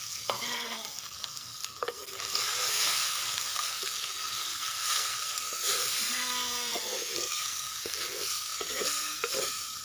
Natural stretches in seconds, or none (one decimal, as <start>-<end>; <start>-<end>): none